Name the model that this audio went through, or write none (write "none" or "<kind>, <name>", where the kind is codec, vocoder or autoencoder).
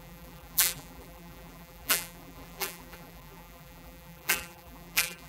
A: vocoder, BigVGAN v2